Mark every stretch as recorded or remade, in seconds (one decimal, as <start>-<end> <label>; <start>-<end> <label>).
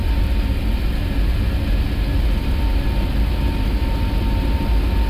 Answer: 0.0-5.1 recorded